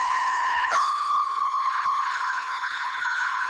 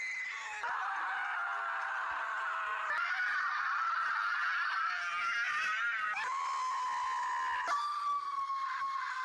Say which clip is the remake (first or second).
first